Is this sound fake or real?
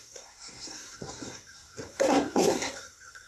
fake